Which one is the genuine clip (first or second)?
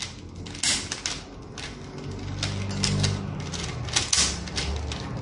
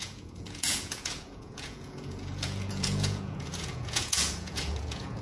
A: first